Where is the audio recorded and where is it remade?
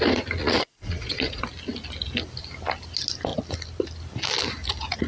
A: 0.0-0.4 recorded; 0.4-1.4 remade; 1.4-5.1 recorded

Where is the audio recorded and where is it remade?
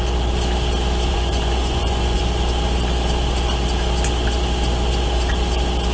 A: 0.0-1.1 recorded; 1.1-2.2 remade; 2.2-5.9 recorded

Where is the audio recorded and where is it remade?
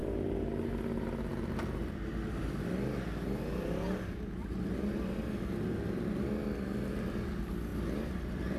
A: 0.0-8.6 recorded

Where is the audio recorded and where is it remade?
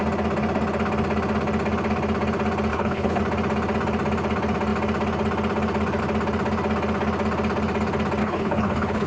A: 0.0-2.7 recorded; 2.7-3.2 remade; 3.2-8.2 recorded; 8.2-9.1 remade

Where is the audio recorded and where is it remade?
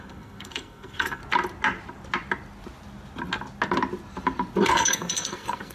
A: 0.0-1.2 remade; 1.2-4.6 recorded; 4.6-5.7 remade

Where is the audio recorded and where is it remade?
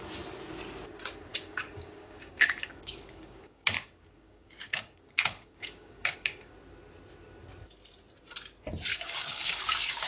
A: 0.0-1.3 recorded; 1.3-6.5 remade; 6.5-8.9 recorded; 8.9-10.1 remade